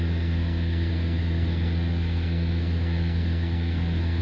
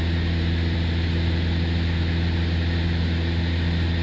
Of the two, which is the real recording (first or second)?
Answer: second